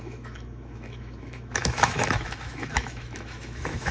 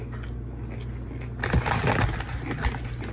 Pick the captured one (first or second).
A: second